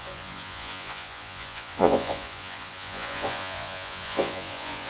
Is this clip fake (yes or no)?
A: yes